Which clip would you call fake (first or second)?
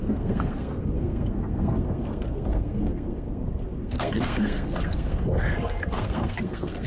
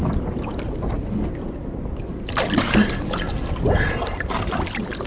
first